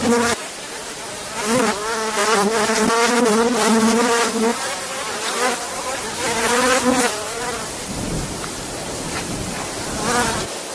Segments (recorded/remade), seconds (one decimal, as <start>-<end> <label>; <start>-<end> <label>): 0.0-0.4 recorded; 0.4-0.9 remade; 0.9-4.5 recorded; 4.5-9.6 remade; 9.6-10.7 recorded